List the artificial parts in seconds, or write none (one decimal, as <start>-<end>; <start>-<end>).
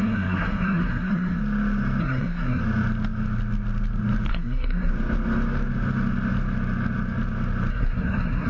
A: 0.0-1.4; 2.0-2.6; 4.3-4.9; 7.7-8.5